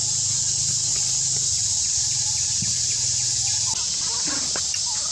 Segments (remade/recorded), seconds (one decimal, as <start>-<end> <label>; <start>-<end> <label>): 0.0-5.1 recorded